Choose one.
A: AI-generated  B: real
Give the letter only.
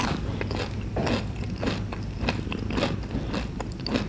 B